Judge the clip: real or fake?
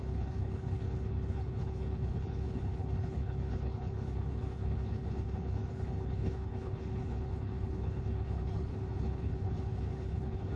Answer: fake